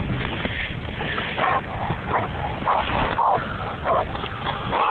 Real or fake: real